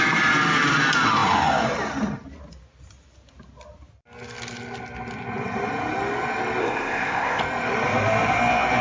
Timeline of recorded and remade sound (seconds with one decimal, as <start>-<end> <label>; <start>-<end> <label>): 0.0-6.6 recorded; 6.6-7.4 remade; 7.4-8.8 recorded